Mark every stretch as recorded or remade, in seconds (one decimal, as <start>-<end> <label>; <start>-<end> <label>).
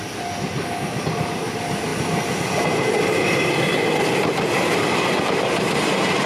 0.0-6.3 recorded